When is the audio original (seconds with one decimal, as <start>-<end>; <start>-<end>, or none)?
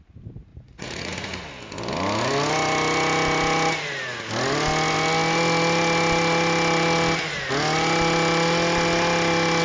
0.0-0.5; 1.4-9.6